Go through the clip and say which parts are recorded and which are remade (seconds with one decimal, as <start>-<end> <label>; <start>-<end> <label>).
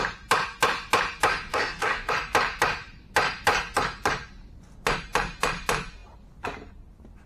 0.0-1.5 recorded; 1.5-2.1 remade; 2.1-7.3 recorded